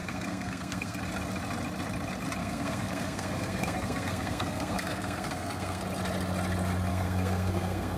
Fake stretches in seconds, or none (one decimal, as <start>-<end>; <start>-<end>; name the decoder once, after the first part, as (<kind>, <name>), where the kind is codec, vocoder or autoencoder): 0.0-1.0 (codec, SNAC); 2.4-5.8; 6.9-8.0